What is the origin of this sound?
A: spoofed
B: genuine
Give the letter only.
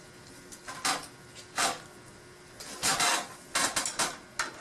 B